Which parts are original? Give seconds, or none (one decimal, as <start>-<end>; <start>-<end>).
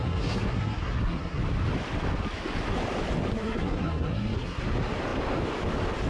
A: 1.4-3.3; 4.6-6.1